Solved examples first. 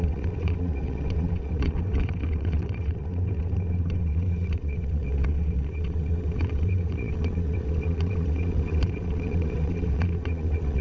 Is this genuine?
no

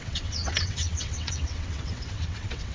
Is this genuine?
no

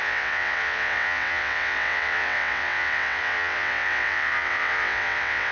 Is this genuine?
no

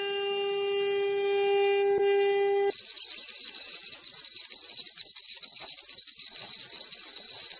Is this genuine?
yes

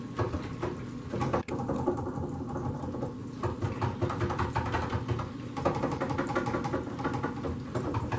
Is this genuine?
yes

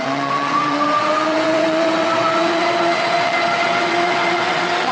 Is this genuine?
no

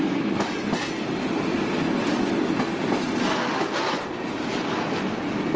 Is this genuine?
yes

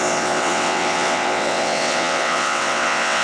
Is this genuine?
no